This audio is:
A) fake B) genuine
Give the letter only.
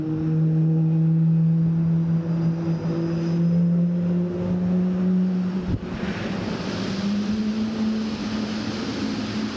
B